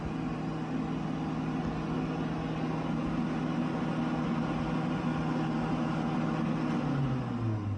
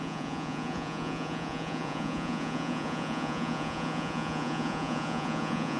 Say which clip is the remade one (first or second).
second